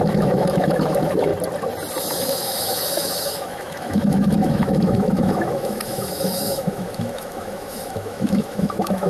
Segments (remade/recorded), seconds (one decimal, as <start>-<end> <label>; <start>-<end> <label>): 0.0-1.3 remade; 1.3-2.0 recorded; 2.0-9.1 remade